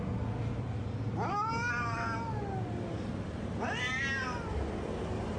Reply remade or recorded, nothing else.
recorded